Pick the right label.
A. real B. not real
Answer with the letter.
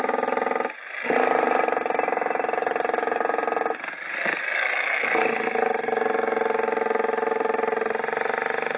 A